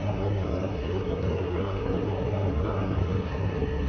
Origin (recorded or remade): remade